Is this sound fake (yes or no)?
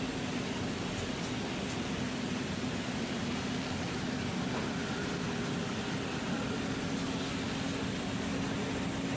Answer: no